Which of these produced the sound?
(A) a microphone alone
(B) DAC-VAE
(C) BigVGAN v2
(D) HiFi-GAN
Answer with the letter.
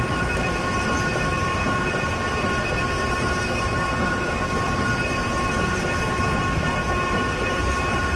C